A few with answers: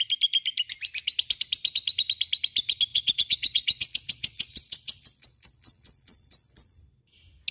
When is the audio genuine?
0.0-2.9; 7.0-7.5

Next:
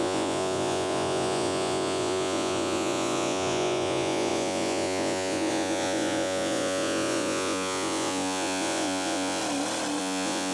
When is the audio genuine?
9.4-10.0

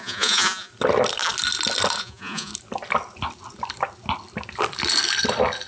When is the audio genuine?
0.7-2.0; 2.5-5.7

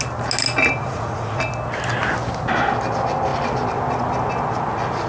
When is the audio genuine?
0.0-0.8; 1.4-5.1